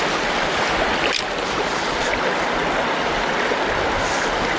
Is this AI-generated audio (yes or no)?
no